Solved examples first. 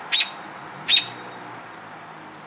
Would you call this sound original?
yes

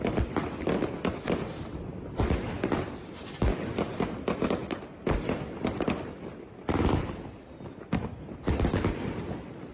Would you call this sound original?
yes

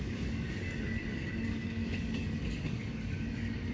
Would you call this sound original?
no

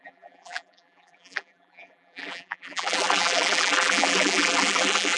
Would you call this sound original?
no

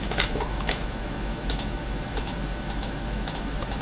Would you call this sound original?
no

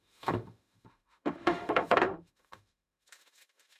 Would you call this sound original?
no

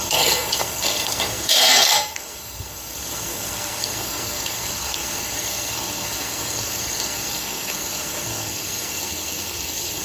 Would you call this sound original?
no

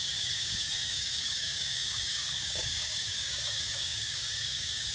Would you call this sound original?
no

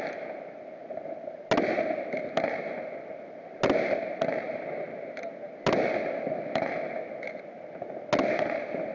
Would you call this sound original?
yes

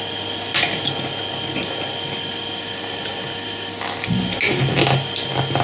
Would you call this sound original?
yes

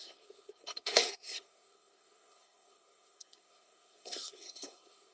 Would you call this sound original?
no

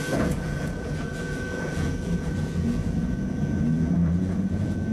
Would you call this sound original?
no